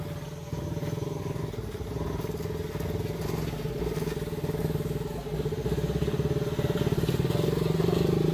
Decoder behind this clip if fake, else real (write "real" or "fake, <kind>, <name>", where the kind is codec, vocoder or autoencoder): real